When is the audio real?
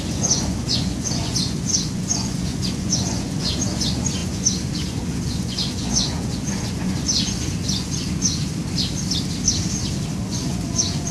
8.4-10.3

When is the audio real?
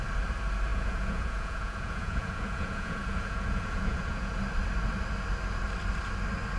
0.0-0.7; 4.4-6.6